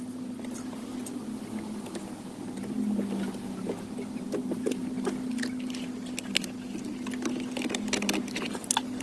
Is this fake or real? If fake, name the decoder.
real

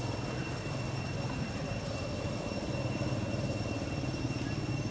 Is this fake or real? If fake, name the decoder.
real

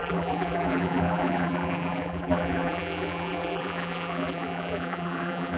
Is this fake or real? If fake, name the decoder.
fake, vocoder, BigVGAN v2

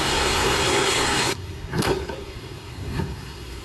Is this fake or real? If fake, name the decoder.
fake, codec, SNAC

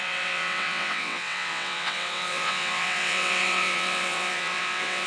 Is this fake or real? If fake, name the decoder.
fake, vocoder, WaveNeXt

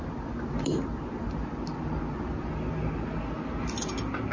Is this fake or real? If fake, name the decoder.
real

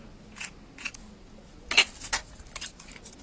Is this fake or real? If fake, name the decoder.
real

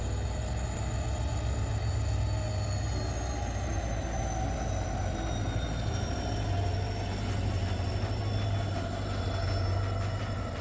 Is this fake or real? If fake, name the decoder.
real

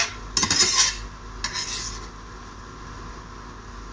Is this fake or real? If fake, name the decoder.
real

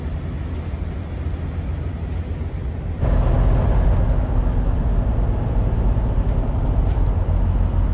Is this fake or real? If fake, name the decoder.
real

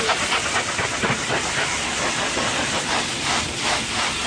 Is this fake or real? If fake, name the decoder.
real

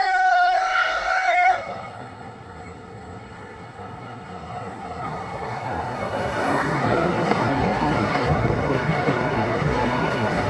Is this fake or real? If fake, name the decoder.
fake, codec, SNAC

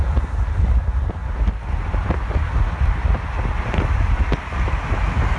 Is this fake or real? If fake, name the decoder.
real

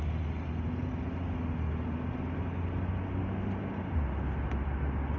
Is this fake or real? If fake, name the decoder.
real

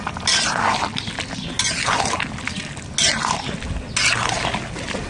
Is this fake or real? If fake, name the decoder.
real